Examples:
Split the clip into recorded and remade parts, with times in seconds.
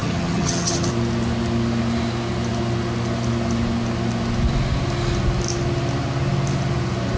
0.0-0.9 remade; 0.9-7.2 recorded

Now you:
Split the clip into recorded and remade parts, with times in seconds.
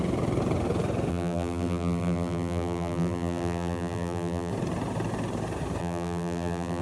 0.0-1.1 recorded; 1.1-4.5 remade; 4.5-5.8 recorded; 5.8-6.8 remade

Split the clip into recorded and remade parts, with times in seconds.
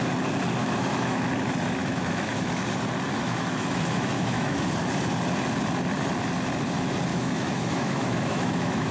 0.0-0.6 recorded; 0.6-1.3 remade; 1.3-1.8 recorded; 1.8-2.5 remade; 2.5-3.2 recorded; 3.2-4.7 remade; 4.7-7.1 recorded; 7.1-8.9 remade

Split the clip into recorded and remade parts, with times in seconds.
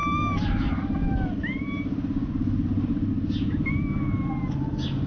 0.0-5.1 recorded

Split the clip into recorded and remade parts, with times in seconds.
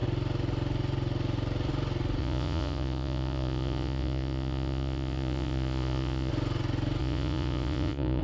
0.0-2.2 recorded; 2.2-6.3 remade; 6.3-7.0 recorded; 7.0-8.2 remade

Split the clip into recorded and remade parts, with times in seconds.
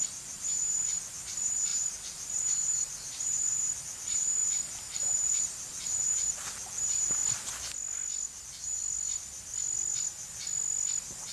0.0-7.2 remade; 7.2-8.4 recorded; 8.4-8.8 remade; 8.8-11.3 recorded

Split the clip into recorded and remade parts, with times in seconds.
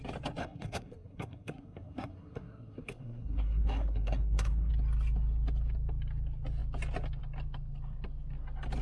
0.0-0.4 recorded; 0.4-4.7 remade; 4.7-8.8 recorded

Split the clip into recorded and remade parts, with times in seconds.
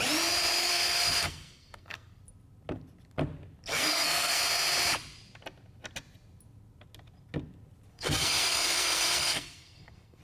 0.0-0.6 recorded; 0.6-2.2 remade; 2.2-3.7 recorded; 3.7-4.4 remade; 4.4-7.9 recorded; 7.9-10.2 remade